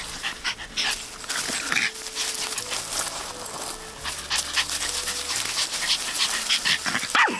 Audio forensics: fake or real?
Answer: real